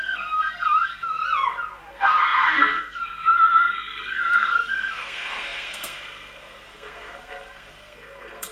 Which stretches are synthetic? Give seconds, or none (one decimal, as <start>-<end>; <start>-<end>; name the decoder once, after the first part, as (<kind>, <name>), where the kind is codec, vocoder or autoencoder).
0.0-1.2 (codec, SNAC); 1.9-8.5